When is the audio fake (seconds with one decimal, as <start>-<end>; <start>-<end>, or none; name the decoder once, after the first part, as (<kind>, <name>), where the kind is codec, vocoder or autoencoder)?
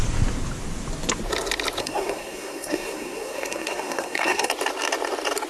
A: 1.8-4.5 (codec, SNAC)